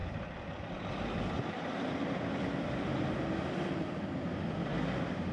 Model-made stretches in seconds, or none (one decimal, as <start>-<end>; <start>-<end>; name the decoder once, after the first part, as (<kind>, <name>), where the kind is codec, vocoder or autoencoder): 0.0-3.2 (vocoder, BigVGAN v2)